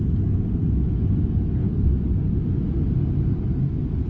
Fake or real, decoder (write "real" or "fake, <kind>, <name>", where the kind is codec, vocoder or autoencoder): real